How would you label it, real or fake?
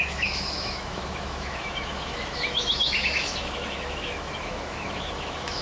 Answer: fake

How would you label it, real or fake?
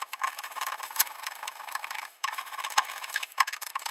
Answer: fake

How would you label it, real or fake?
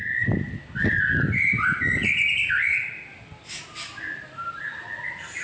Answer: real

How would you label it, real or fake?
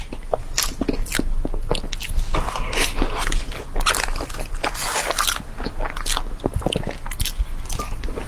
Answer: real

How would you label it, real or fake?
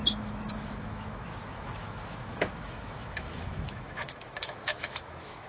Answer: fake